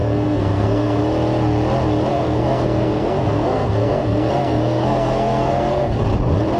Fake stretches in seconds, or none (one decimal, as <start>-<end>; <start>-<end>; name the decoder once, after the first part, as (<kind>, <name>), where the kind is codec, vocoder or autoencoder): 0.0-1.0 (codec, SNAC); 2.1-6.0